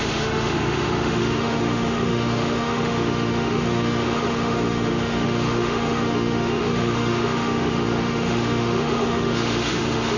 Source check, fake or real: fake